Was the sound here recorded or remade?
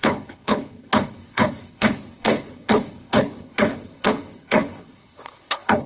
remade